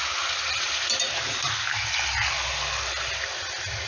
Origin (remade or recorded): recorded